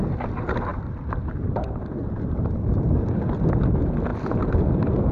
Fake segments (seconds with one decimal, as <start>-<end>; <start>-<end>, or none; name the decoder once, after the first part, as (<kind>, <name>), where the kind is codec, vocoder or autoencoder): 0.7-3.1 (vocoder, BigVGAN v2)